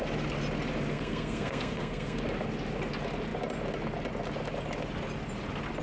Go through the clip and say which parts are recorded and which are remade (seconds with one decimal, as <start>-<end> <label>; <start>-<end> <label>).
0.0-0.9 recorded; 0.9-2.2 remade; 2.2-5.8 recorded